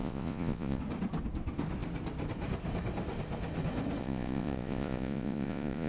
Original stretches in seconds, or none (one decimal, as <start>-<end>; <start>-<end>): 0.8-4.0